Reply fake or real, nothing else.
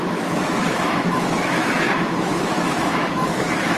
fake